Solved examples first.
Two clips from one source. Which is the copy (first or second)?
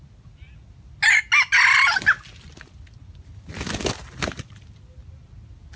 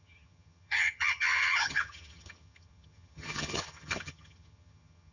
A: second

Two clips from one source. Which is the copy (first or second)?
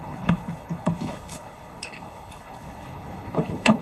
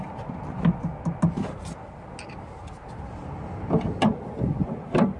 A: first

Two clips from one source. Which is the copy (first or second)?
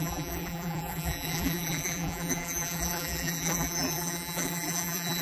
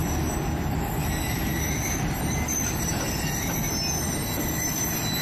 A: first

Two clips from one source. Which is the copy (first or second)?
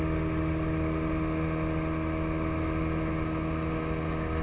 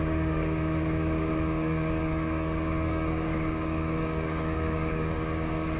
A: second